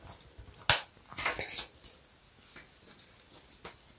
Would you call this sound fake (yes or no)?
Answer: no